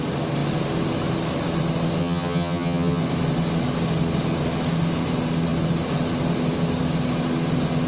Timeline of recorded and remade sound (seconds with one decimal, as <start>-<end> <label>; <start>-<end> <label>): 0.0-2.0 recorded; 2.0-3.0 remade; 3.0-7.9 recorded